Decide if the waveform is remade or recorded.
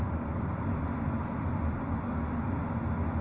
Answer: recorded